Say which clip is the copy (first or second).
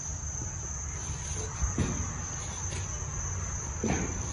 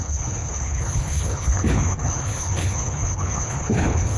second